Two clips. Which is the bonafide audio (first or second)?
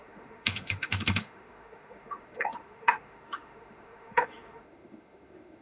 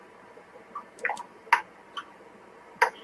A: second